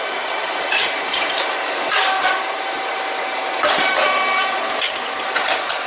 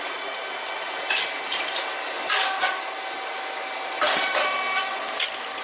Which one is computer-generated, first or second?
first